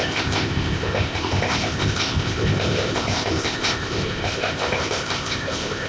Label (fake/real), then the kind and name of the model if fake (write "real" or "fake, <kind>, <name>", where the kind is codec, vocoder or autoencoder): fake, codec, ZipCodec